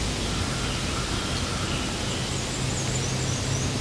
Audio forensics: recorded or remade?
recorded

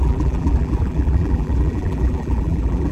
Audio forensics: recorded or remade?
remade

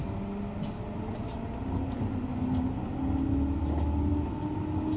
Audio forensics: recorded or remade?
recorded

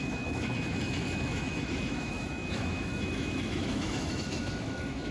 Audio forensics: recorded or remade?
remade